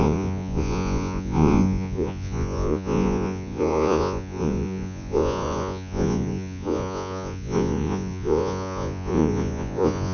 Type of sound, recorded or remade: remade